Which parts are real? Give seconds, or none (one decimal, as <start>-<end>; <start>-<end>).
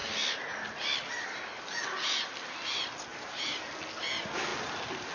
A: 0.0-3.1; 3.7-5.1